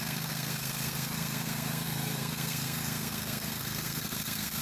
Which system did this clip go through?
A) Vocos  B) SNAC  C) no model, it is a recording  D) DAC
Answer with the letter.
B